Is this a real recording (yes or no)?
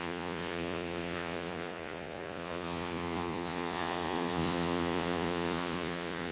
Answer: no